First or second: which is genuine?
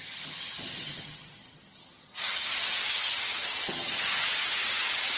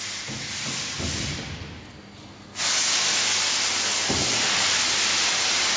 second